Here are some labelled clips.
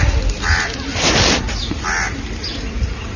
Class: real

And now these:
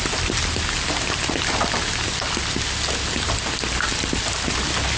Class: real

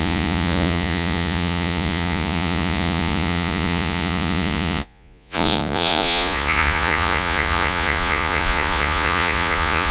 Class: fake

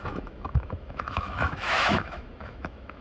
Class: fake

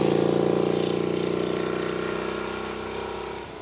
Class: real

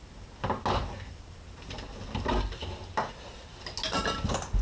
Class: real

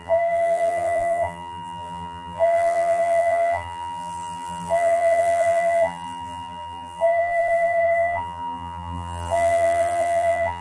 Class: fake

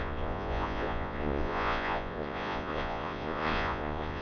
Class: fake